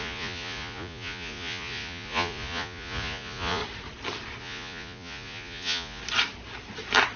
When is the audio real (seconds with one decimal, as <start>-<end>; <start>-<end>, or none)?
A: 3.6-4.4; 6.0-7.2

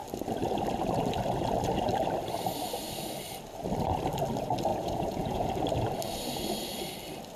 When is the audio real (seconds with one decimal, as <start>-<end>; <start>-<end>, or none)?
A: 0.0-4.7; 5.5-7.4

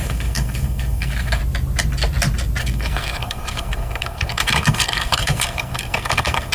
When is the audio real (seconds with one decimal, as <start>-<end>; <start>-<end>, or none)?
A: 1.4-2.6

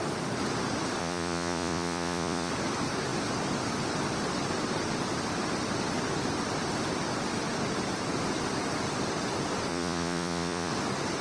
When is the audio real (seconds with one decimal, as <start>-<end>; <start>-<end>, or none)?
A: 0.0-1.0; 2.5-9.7; 10.7-11.2